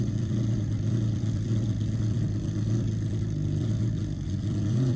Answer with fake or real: fake